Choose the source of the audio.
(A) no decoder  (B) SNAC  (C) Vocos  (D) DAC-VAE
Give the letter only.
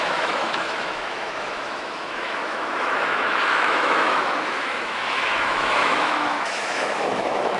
D